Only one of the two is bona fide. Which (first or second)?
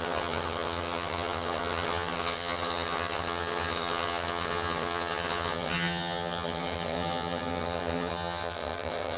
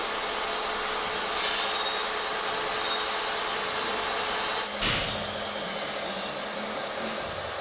second